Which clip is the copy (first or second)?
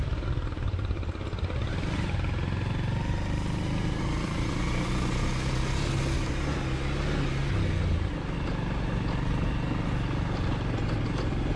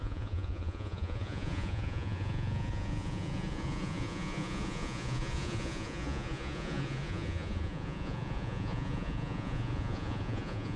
second